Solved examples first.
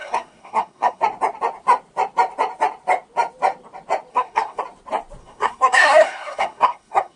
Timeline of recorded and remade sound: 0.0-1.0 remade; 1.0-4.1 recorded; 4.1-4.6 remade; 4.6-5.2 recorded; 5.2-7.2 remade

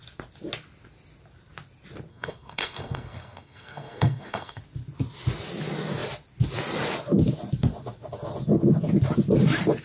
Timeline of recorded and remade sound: 0.0-2.1 recorded; 2.1-4.6 remade; 4.6-9.8 recorded

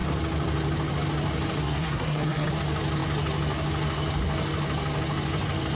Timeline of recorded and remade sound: 0.0-1.6 recorded; 1.6-2.5 remade; 2.5-5.8 recorded

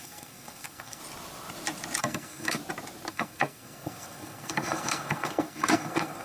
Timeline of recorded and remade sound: 0.0-1.0 remade; 1.0-2.0 recorded; 2.0-2.6 remade; 2.6-3.1 recorded; 3.1-6.2 remade